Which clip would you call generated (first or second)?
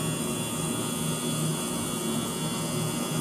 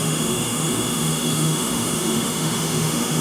second